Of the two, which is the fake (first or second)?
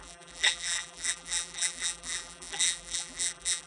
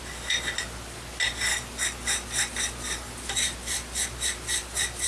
first